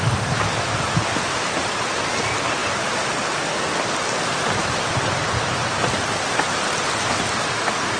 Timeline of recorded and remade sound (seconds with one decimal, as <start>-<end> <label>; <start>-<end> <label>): 0.0-8.0 recorded